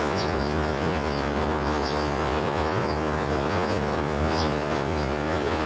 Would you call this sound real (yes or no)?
no